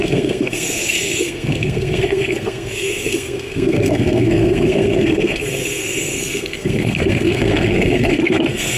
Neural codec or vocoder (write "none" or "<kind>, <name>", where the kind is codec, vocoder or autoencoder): codec, SNAC